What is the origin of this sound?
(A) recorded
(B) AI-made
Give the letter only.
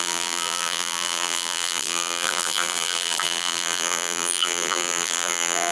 B